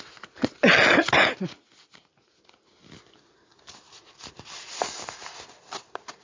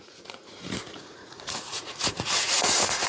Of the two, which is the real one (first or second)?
first